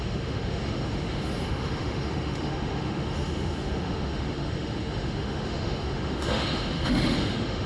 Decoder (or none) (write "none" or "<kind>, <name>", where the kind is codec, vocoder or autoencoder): autoencoder, DAC-VAE